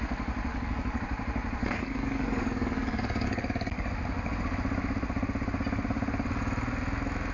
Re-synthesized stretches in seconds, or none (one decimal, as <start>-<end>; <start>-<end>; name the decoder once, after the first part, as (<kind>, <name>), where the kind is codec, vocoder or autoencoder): 0.5-1.0 (codec, DAC); 1.6-3.9